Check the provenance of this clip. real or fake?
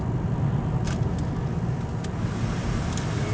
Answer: real